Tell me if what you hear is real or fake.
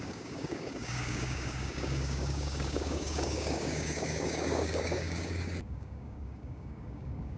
fake